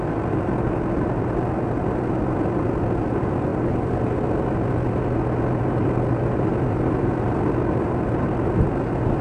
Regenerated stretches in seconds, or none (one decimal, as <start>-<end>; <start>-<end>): none